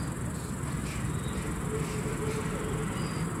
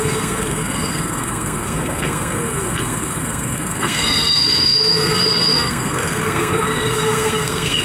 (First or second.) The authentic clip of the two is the first